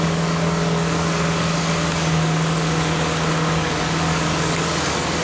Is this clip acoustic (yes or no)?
no